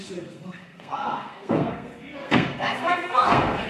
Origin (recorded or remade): remade